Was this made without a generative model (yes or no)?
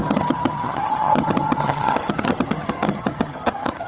no